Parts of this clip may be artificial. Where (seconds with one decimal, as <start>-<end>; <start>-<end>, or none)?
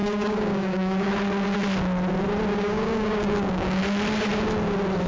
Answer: 0.0-1.1; 2.5-3.8